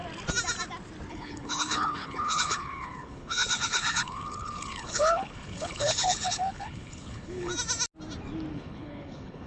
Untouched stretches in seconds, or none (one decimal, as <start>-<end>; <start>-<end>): 0.0-1.1; 7.5-8.5

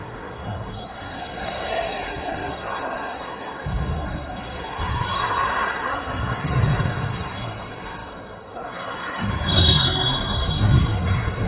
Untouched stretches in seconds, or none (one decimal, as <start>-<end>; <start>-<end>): none

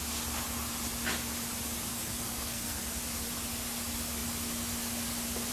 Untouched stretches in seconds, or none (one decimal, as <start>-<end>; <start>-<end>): 0.0-1.9; 3.0-5.5

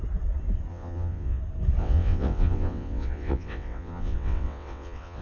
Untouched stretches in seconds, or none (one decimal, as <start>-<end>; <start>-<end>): 0.0-0.7; 1.4-1.8